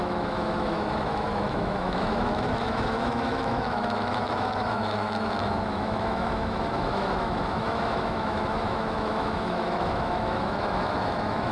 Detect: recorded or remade remade